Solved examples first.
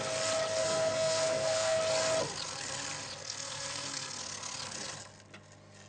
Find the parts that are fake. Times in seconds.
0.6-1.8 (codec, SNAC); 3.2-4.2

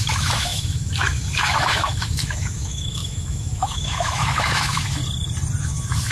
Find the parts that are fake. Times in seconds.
0.0-5.0 (autoencoder, DAC-VAE); 5.6-6.1

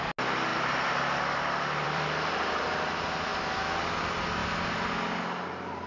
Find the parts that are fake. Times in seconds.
0.5-2.9 (vocoder, BigVGAN v2)

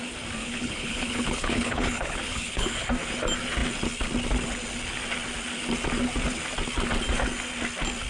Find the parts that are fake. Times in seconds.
0.4-2.9 (codec, HILCodec)

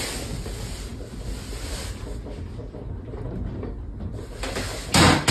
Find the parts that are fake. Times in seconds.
none